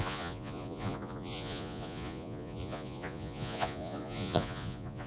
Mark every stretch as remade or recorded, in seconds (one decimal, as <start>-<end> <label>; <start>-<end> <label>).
0.0-5.1 remade

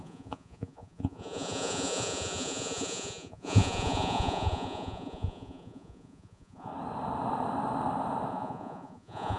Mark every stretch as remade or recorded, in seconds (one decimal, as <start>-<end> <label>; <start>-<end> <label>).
0.0-6.7 remade; 6.7-8.3 recorded; 8.3-9.4 remade

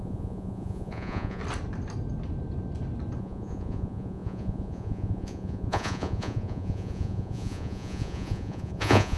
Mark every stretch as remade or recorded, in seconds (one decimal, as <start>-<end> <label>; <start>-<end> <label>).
0.0-1.4 remade; 1.4-3.2 recorded; 3.2-9.2 remade

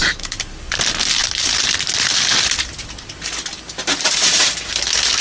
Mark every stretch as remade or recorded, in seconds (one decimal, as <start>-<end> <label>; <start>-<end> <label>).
0.0-5.2 recorded

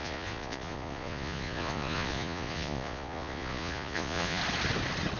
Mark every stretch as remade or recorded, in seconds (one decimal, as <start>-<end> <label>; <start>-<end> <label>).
0.0-4.4 remade; 4.4-5.2 recorded